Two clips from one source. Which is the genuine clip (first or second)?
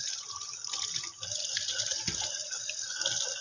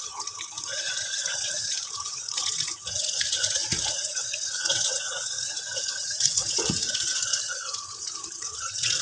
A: first